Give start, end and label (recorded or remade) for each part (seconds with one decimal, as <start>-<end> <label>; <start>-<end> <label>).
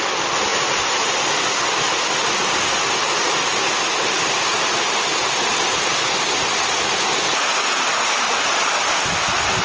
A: 0.0-9.6 recorded